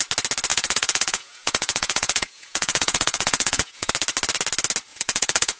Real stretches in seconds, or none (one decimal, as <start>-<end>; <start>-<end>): 0.0-0.5; 3.9-4.9